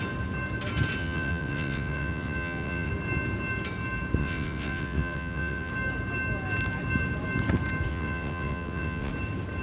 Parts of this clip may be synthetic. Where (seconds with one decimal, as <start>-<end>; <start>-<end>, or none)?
1.0-2.9; 4.2-5.7; 7.9-9.1